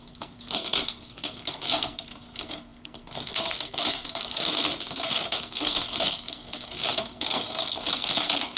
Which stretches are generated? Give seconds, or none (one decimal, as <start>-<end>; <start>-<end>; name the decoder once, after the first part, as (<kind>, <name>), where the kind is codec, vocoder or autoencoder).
0.0-8.6 (codec, SNAC)